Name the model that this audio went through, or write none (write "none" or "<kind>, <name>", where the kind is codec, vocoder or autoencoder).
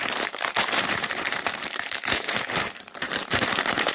vocoder, BigVGAN v2